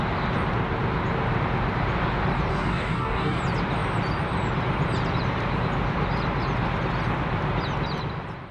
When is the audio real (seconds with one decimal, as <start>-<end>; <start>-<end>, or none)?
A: 0.0-2.5; 3.4-8.5